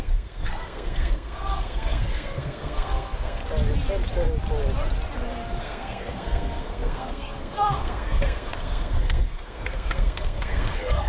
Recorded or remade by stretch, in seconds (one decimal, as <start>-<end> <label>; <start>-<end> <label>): 0.0-3.4 remade; 3.4-5.6 recorded; 5.6-11.1 remade